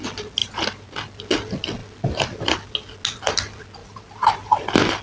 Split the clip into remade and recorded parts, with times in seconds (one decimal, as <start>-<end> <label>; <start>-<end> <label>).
0.0-0.4 recorded; 0.4-0.9 remade; 0.9-3.8 recorded; 3.8-4.6 remade; 4.6-5.0 recorded